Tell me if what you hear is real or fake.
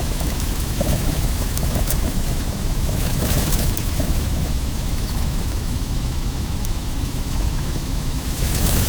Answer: fake